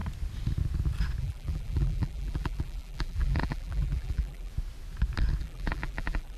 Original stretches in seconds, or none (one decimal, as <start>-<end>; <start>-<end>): 0.0-1.2; 4.5-5.4